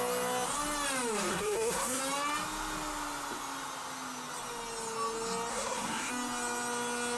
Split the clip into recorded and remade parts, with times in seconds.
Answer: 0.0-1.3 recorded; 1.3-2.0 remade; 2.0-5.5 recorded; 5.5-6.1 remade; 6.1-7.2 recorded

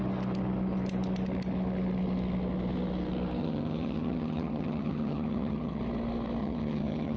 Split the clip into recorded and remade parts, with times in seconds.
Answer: 0.0-3.4 recorded; 3.4-5.8 remade; 5.8-6.4 recorded; 6.4-7.2 remade

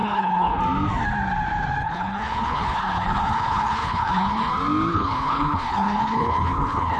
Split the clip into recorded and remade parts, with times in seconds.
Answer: 0.0-0.6 remade; 0.6-1.8 recorded; 1.8-4.5 remade; 4.5-4.9 recorded; 4.9-7.0 remade